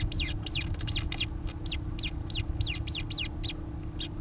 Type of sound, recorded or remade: recorded